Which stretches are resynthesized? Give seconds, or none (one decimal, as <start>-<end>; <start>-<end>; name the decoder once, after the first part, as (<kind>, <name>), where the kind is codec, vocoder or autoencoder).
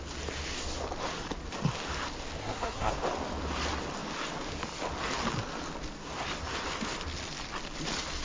2.4-2.9 (codec, SNAC)